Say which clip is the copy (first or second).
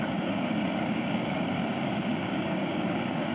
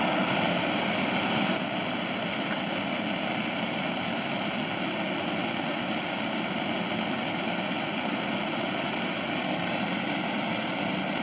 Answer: first